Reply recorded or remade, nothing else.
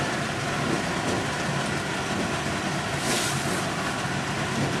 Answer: recorded